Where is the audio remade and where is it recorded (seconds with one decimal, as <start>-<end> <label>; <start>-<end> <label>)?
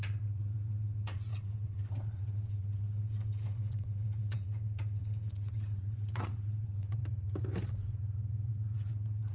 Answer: 0.0-7.0 remade; 7.0-8.5 recorded; 8.5-9.3 remade